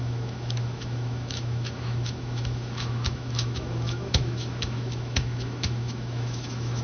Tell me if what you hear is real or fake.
fake